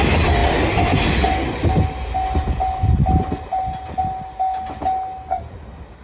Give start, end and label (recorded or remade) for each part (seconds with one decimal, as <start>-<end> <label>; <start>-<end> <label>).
0.0-6.0 recorded